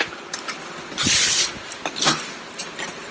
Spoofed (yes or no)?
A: no